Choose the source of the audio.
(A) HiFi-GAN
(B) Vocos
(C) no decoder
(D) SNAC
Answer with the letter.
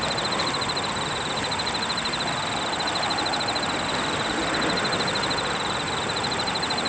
C